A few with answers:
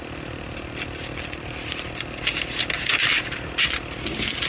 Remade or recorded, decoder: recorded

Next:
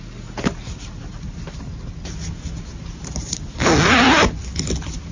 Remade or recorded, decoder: recorded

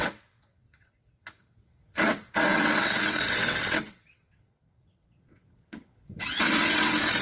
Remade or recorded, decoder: remade, vocoder, WaveNeXt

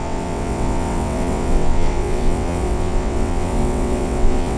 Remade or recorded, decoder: remade, vocoder, WaveNeXt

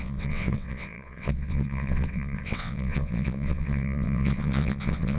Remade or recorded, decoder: remade, vocoder, WaveNeXt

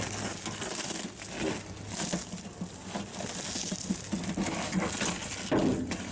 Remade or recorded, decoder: recorded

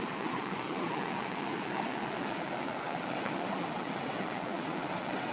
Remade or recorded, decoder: remade, vocoder, WaveNeXt